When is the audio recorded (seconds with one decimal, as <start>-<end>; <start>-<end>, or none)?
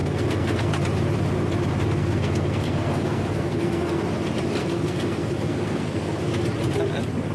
0.7-2.0; 4.0-4.6; 6.2-7.3